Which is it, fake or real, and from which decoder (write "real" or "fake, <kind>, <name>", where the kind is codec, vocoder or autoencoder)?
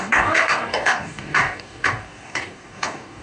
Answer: fake, codec, DAC